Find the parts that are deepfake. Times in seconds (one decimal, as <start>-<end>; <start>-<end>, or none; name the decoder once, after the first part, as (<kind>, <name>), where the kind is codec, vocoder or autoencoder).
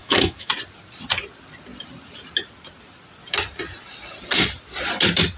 0.0-0.5 (autoencoder, DAC-VAE)